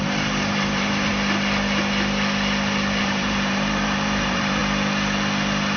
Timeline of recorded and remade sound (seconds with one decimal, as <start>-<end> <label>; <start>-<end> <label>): 0.0-1.1 remade; 1.1-3.0 recorded; 3.0-4.6 remade; 4.6-5.8 recorded